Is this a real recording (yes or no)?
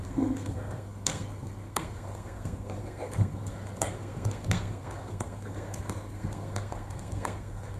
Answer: no